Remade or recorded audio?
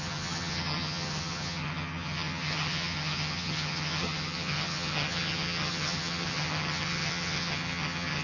remade